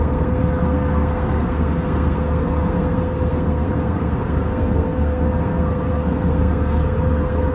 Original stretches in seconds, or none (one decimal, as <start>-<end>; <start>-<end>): none